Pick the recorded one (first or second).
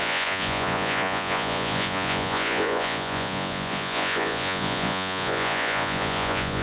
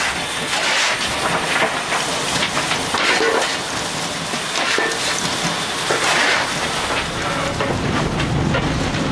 second